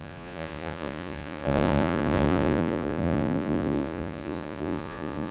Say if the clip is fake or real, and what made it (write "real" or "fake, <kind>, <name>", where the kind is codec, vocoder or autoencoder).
fake, vocoder, Vocos